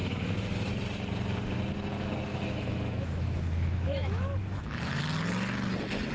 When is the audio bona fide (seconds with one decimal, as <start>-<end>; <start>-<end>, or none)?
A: 0.7-2.3; 5.0-6.1